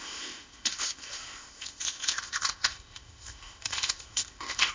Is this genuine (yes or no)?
no